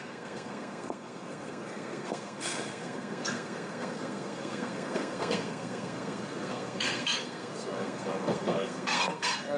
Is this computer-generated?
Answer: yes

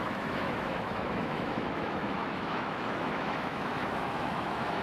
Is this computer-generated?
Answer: yes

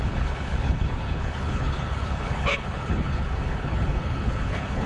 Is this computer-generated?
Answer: yes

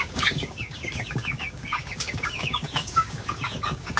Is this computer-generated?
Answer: yes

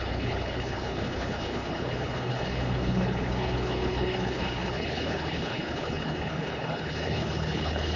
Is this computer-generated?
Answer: yes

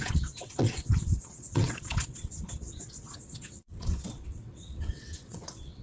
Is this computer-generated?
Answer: yes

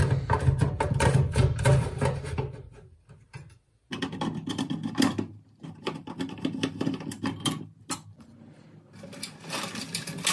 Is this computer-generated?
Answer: no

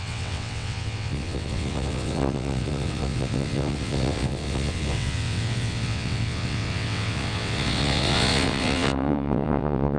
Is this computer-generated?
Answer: yes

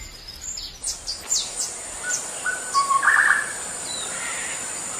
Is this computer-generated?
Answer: no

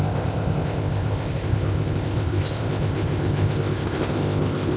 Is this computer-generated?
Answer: yes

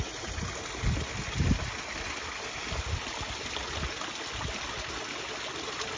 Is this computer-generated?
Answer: no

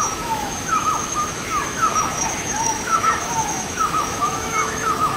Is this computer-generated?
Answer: yes